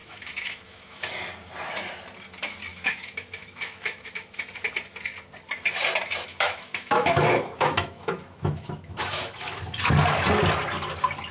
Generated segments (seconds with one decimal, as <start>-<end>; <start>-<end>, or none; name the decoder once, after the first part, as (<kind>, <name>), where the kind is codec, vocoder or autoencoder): 0.0-1.1 (autoencoder, DAC-VAE); 2.7-4.4; 6.3-9.6